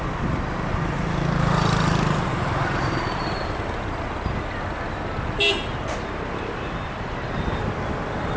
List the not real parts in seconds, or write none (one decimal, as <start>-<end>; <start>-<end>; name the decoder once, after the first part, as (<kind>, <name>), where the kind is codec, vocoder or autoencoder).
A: 2.3-4.0 (vocoder, BigVGAN v2)